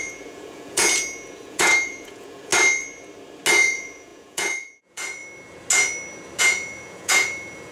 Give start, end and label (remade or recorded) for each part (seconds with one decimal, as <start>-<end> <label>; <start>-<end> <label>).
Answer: 0.0-2.5 remade; 2.5-3.5 recorded; 3.5-5.2 remade; 5.2-6.4 recorded; 6.4-7.7 remade